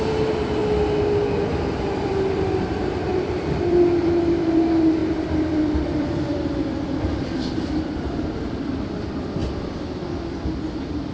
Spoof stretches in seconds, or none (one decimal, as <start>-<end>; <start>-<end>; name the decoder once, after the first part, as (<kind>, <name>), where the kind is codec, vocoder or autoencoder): 0.0-0.6 (vocoder, BigVGAN v2); 2.0-9.4